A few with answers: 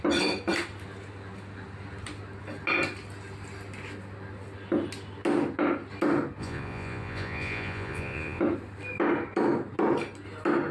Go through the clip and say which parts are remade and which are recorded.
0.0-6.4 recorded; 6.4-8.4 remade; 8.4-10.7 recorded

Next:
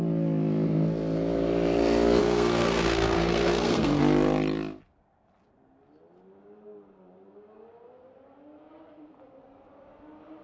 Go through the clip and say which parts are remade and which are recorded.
0.0-2.2 recorded; 2.2-4.0 remade; 4.0-10.4 recorded

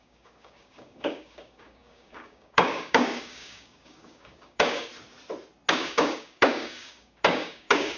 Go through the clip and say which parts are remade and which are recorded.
0.0-4.9 remade; 4.9-5.7 recorded; 5.7-8.0 remade

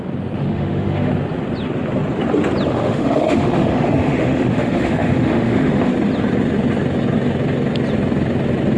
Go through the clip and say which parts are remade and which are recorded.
0.0-0.5 recorded; 0.5-1.1 remade; 1.1-2.7 recorded; 2.7-5.9 remade; 5.9-8.8 recorded

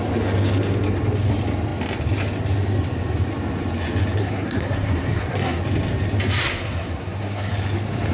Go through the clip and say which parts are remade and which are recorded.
0.0-4.2 recorded; 4.2-5.6 remade; 5.6-6.4 recorded; 6.4-7.5 remade; 7.5-8.1 recorded

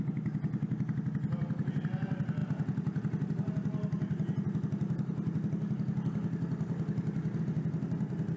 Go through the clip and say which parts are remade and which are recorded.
0.0-8.4 recorded

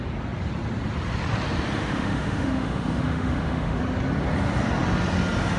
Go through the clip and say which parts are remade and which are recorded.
0.0-1.8 recorded; 1.8-3.8 remade; 3.8-5.6 recorded

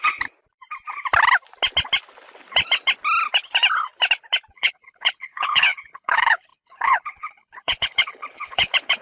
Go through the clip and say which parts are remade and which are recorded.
0.0-4.5 recorded; 4.5-9.0 remade